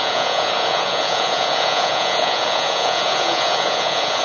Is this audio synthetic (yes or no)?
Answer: yes